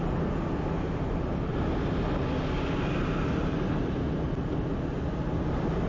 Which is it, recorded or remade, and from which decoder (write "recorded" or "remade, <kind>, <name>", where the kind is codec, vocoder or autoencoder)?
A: recorded